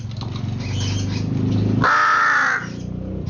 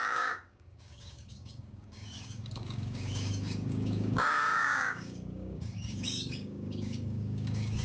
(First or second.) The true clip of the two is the first